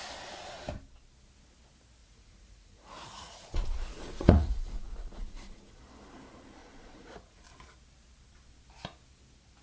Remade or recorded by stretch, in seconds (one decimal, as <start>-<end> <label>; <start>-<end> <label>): 0.0-2.0 recorded; 2.0-5.7 remade; 5.7-6.6 recorded; 6.6-7.4 remade; 7.4-9.6 recorded